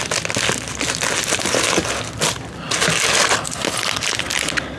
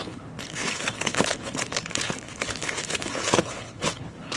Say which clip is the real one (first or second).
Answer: first